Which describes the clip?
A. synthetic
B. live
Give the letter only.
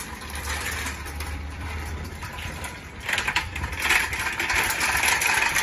A